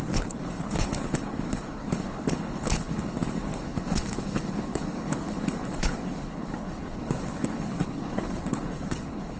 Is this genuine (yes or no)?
no